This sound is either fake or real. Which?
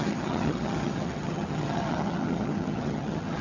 fake